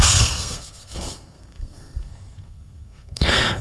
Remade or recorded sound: remade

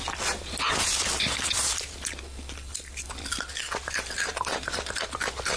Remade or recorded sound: remade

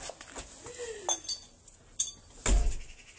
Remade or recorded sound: recorded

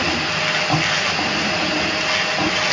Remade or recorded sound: recorded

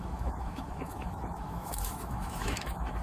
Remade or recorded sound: remade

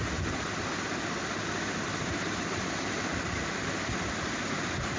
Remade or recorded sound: recorded